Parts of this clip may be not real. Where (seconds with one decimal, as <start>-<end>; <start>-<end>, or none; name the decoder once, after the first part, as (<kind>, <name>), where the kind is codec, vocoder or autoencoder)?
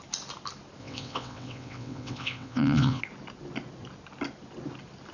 0.8-3.0 (vocoder, WaveNeXt)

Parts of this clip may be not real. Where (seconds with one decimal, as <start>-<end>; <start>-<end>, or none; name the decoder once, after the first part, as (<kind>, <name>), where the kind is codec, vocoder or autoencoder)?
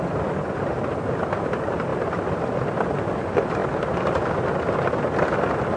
none